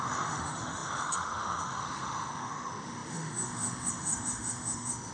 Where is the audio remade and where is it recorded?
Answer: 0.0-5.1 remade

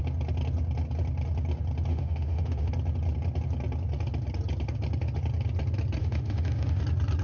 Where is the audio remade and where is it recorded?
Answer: 0.0-1.9 recorded; 1.9-2.7 remade; 2.7-6.0 recorded; 6.0-6.8 remade; 6.8-7.2 recorded

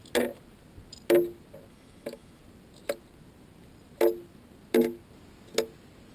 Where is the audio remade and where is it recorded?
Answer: 0.0-1.7 recorded; 1.7-2.4 remade; 2.4-6.1 recorded

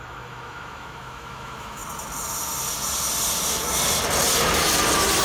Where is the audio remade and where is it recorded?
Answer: 0.0-1.8 remade; 1.8-5.2 recorded

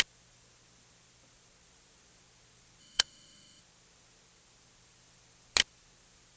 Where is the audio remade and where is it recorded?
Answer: 0.0-2.8 recorded; 2.8-3.6 remade; 3.6-6.4 recorded

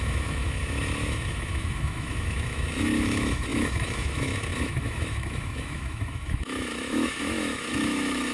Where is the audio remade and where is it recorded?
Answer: 0.0-8.3 remade

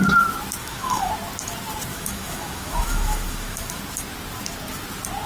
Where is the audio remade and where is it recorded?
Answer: 0.0-0.6 recorded; 0.6-1.1 remade; 1.1-1.9 recorded; 1.9-3.8 remade; 3.8-5.3 recorded

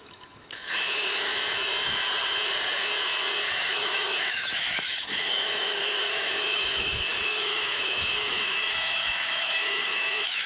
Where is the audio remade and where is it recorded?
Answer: 0.0-1.3 remade; 1.3-3.5 recorded; 3.5-10.5 remade